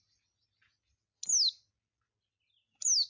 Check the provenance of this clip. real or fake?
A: real